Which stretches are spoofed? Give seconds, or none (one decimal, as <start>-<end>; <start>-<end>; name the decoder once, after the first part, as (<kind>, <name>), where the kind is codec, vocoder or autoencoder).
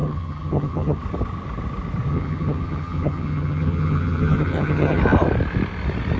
0.0-1.0 (vocoder, HiFi-GAN); 2.1-5.0